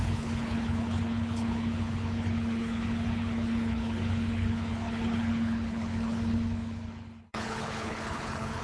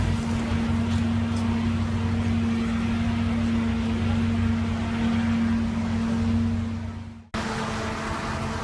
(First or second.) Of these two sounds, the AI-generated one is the first